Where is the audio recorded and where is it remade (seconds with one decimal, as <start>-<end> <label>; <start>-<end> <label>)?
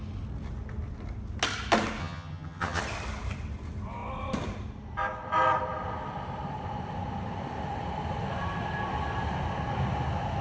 0.0-2.0 recorded; 2.0-2.8 remade; 2.8-10.4 recorded